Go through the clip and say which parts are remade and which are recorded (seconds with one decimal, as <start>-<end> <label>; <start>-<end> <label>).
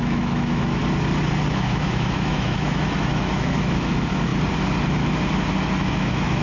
0.0-0.8 remade; 0.8-1.5 recorded; 1.5-4.3 remade; 4.3-5.8 recorded; 5.8-6.4 remade